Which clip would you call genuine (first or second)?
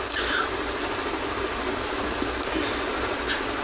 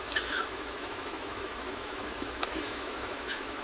first